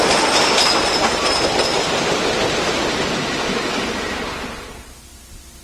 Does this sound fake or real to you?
real